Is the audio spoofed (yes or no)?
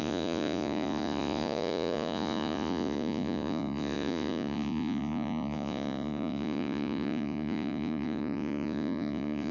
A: yes